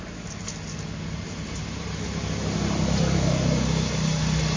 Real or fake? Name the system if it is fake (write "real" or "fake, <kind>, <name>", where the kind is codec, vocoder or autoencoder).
real